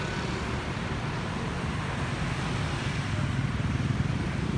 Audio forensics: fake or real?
real